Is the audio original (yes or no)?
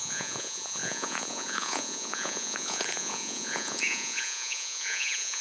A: no